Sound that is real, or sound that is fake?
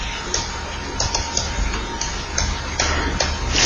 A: real